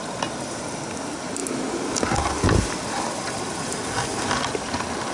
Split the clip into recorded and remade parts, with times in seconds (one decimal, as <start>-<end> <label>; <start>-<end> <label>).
0.0-5.1 recorded